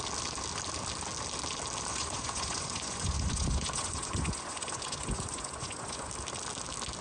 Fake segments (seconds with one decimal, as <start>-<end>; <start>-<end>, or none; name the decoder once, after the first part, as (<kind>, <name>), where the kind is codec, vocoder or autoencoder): 1.9-6.1 (vocoder, Vocos)